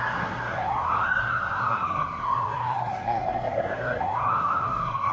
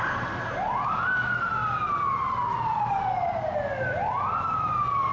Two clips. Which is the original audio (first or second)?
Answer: second